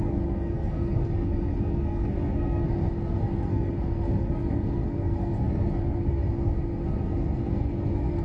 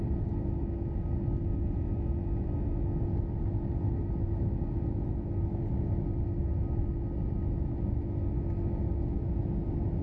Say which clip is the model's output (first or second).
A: first